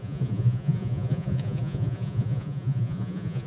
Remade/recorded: remade